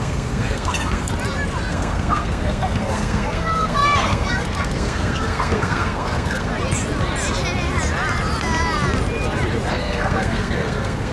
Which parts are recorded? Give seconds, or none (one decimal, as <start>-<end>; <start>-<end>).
1.1-1.7; 6.5-9.7